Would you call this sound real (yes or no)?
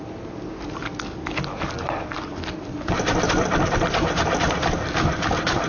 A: yes